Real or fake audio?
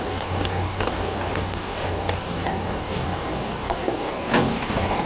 fake